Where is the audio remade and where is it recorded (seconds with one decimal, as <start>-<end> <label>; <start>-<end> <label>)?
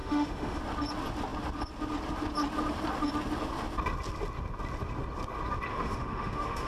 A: 0.0-0.6 remade; 0.6-5.7 recorded; 5.7-6.7 remade